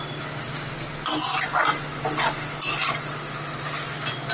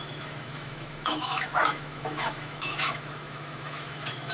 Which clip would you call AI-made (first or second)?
second